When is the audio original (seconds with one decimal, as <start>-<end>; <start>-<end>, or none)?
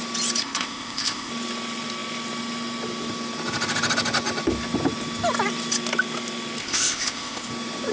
0.0-0.4; 1.3-6.6; 7.5-7.9